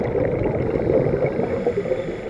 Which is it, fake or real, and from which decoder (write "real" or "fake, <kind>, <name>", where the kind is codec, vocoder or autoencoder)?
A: real